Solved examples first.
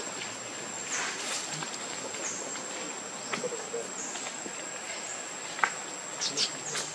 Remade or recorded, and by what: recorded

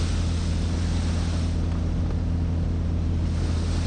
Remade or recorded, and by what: recorded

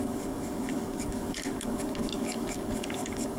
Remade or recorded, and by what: remade, codec, DAC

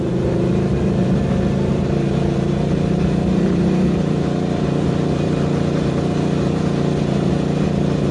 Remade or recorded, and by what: remade, vocoder, BigVGAN v2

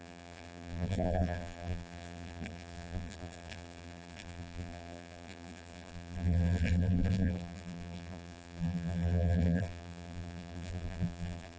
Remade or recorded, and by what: remade, vocoder, BigVGAN v2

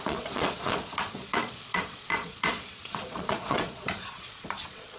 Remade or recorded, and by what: remade, vocoder, Vocos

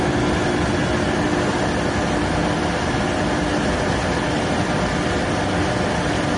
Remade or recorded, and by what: recorded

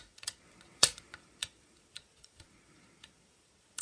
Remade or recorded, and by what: remade, vocoder, Vocos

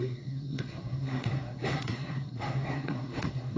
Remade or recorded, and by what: remade, codec, SNAC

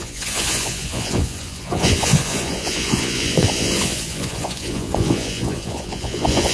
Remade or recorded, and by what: remade, vocoder, Vocos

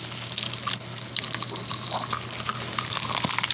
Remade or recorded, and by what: recorded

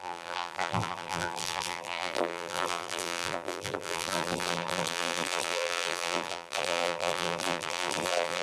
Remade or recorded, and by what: remade, vocoder, BigVGAN v2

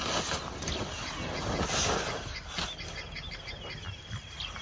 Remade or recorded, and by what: recorded